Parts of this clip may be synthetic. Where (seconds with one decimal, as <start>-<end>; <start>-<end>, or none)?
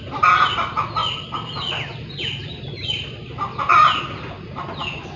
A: none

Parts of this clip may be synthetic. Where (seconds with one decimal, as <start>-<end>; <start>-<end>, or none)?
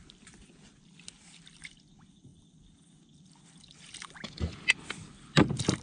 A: none